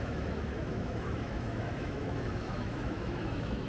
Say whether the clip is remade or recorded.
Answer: remade